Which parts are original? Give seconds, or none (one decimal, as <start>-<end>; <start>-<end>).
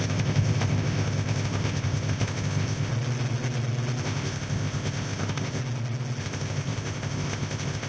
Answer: 2.9-4.0; 5.6-6.2